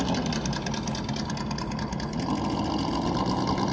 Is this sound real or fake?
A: real